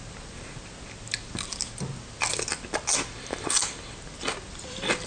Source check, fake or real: real